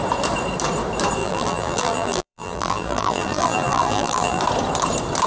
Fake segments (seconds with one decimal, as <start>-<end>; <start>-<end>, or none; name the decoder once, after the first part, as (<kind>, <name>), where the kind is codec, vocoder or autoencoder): 1.2-4.4 (vocoder, BigVGAN v2)